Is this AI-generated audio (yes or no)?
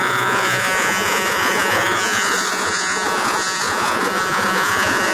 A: yes